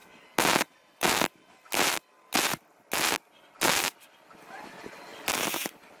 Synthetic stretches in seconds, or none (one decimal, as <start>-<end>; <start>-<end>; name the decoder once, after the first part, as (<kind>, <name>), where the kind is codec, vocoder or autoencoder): none